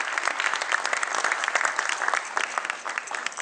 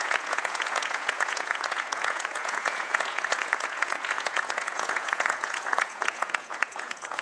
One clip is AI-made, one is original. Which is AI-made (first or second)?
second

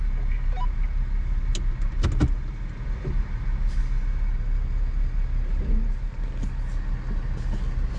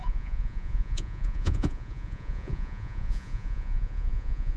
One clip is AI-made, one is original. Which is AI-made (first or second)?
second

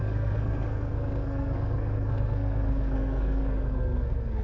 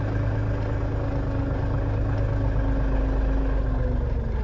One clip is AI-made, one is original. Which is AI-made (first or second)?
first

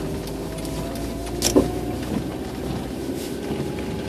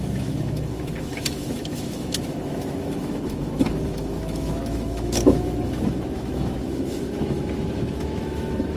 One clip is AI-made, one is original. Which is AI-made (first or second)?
second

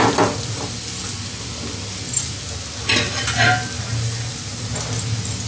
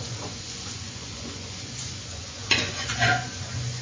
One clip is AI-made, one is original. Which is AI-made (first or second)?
second